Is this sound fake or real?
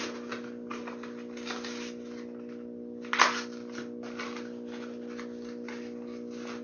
real